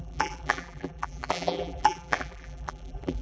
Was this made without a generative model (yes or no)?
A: no